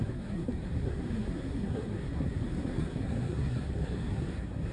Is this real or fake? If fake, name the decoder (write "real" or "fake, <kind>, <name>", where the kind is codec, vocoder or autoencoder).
fake, codec, SNAC